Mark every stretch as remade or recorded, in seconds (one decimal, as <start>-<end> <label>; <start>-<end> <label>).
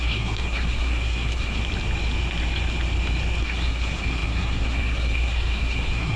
0.0-1.6 remade; 1.6-3.4 recorded; 3.4-6.2 remade